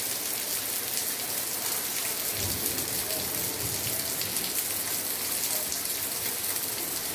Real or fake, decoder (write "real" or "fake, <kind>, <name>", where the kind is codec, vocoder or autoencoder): real